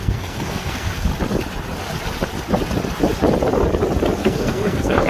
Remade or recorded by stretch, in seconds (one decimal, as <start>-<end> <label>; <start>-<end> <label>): 0.0-1.1 remade; 1.1-4.2 recorded; 4.2-5.1 remade